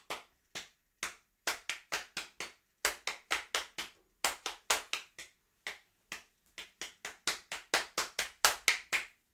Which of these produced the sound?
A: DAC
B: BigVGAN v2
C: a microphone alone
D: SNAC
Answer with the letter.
C